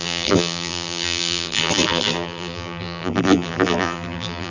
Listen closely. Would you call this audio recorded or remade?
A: remade